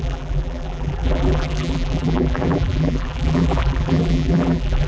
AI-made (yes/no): yes